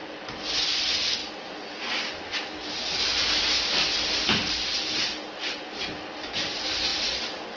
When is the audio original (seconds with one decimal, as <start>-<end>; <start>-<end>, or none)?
0.0-7.6